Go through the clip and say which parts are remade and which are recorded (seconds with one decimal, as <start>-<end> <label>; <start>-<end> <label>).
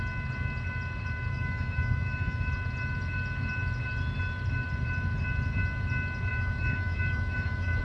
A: 0.0-1.3 recorded; 1.3-2.5 remade; 2.5-6.3 recorded; 6.3-7.8 remade